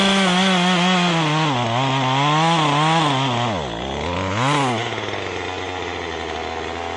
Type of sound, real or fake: real